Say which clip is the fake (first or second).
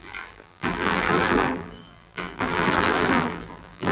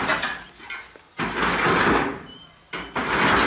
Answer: first